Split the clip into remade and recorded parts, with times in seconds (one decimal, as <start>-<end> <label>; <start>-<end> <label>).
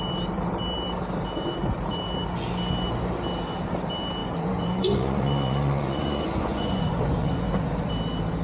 0.0-4.2 recorded; 4.2-7.9 remade; 7.9-8.4 recorded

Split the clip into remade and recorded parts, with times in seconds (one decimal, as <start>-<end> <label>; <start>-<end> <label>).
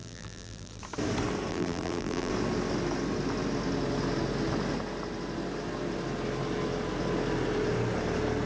0.0-0.8 remade; 0.8-1.5 recorded; 1.5-2.3 remade; 2.3-8.5 recorded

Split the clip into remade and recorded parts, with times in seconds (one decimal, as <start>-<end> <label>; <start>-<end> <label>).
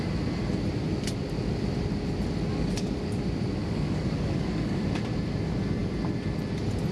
0.0-2.5 recorded; 2.5-3.2 remade; 3.2-3.6 recorded; 3.6-4.8 remade; 4.8-6.9 recorded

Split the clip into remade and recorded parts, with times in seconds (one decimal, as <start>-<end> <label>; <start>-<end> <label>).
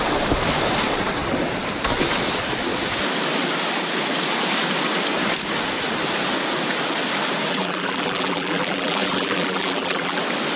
0.0-7.5 recorded; 7.5-10.2 remade; 10.2-10.6 recorded